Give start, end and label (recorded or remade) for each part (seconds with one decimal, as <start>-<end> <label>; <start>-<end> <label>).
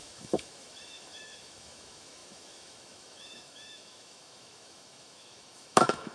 0.0-6.1 remade